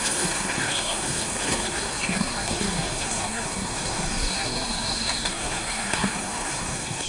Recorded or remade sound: remade